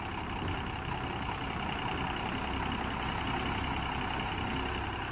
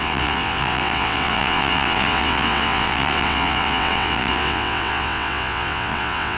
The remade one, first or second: second